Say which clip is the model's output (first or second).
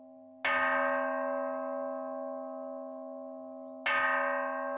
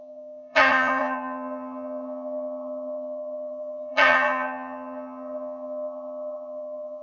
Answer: second